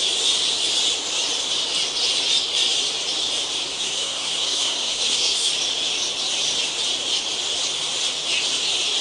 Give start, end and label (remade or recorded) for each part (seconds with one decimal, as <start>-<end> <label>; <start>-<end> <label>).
0.0-3.7 recorded; 3.7-5.5 remade; 5.5-9.0 recorded